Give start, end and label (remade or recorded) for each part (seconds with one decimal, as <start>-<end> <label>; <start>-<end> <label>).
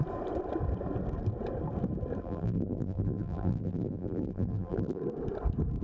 0.0-2.2 recorded; 2.2-5.0 remade; 5.0-5.8 recorded